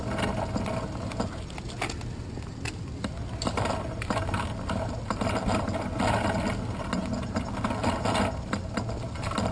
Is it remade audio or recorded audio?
recorded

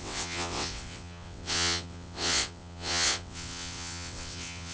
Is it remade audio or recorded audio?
remade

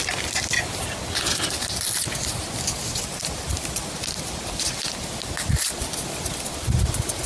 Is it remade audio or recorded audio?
recorded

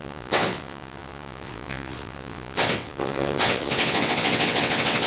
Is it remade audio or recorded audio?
remade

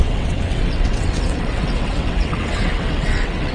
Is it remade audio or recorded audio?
remade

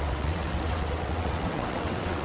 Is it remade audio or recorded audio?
remade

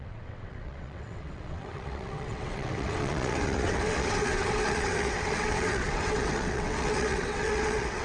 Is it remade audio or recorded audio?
remade